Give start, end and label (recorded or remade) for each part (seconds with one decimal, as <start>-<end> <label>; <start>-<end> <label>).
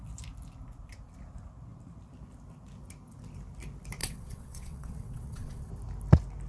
0.0-4.0 recorded; 4.0-5.7 remade; 5.7-6.5 recorded